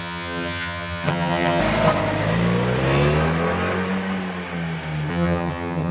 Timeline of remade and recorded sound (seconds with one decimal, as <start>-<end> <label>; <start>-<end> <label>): 0.0-1.6 remade; 1.6-5.1 recorded; 5.1-5.9 remade